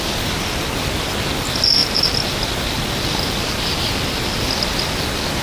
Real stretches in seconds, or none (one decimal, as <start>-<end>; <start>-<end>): 0.0-5.4